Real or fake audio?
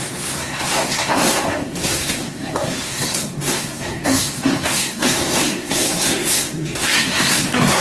fake